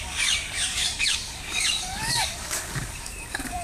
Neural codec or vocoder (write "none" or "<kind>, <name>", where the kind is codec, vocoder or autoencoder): codec, DAC